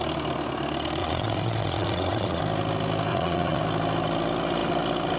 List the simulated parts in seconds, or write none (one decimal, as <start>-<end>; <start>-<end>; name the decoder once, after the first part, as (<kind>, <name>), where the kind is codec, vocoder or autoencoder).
1.0-2.4 (vocoder, Vocos); 3.1-3.6